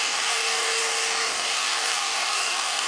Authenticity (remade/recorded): remade